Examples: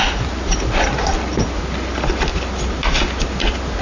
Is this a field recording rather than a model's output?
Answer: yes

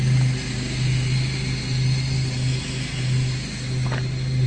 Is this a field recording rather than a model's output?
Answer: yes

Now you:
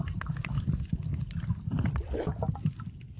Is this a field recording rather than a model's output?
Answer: yes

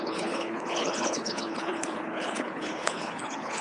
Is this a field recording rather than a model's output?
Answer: no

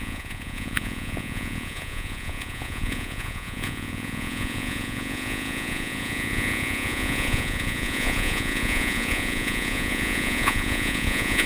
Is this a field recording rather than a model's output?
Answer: no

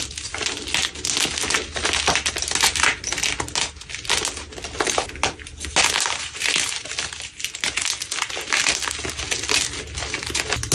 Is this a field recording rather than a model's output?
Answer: yes